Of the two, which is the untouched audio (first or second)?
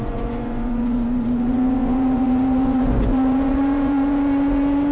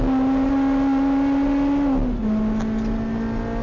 second